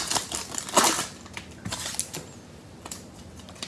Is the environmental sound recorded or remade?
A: recorded